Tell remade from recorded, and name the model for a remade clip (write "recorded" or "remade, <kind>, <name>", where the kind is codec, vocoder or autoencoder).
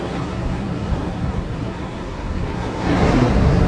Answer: remade, codec, SNAC